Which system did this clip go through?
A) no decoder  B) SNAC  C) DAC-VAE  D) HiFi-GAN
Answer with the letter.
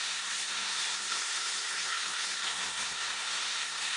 B